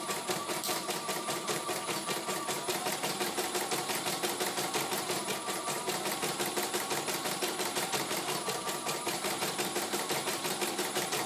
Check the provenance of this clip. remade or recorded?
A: remade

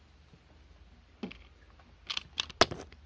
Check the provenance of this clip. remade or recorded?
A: recorded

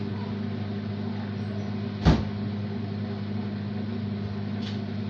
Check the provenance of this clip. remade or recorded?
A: recorded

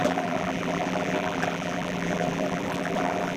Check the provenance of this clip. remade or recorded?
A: remade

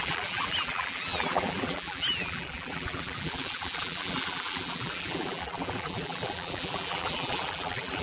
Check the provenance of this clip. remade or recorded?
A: remade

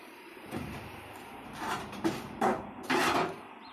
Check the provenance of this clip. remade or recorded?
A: remade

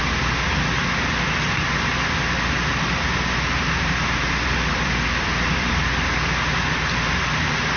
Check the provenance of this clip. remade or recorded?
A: remade